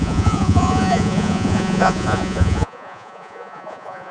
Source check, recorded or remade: remade